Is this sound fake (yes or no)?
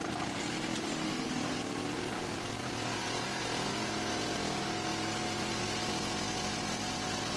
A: no